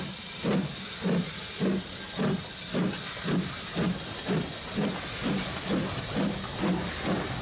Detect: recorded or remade recorded